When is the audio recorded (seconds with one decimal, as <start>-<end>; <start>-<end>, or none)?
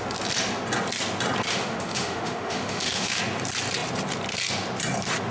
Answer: 0.0-1.5; 3.2-5.3